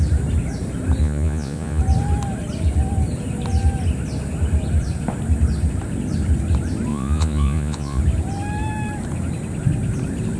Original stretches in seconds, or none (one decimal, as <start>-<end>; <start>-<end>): 0.0-1.0; 1.8-6.9; 8.0-10.4